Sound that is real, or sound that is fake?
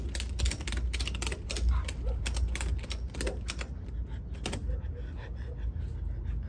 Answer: real